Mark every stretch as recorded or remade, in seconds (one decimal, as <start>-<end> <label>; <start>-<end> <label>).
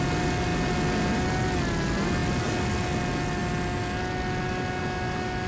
0.0-5.5 recorded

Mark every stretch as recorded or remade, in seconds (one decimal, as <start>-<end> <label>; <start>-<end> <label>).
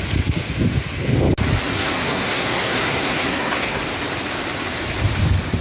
0.0-1.7 recorded; 1.7-3.8 remade; 3.8-5.6 recorded